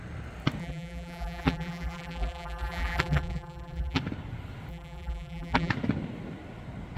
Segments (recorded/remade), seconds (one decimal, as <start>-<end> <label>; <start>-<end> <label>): 0.0-0.6 recorded; 0.6-4.0 remade; 4.0-4.7 recorded; 4.7-5.7 remade; 5.7-7.0 recorded